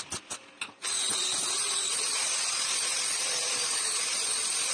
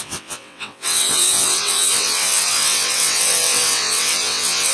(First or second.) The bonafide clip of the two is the first